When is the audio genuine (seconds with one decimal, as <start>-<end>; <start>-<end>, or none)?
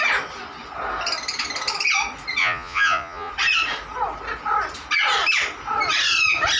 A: 0.0-2.4; 3.3-6.6